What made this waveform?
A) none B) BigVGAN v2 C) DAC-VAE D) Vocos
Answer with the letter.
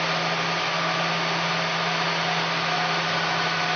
A